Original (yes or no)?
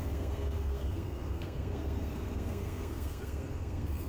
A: no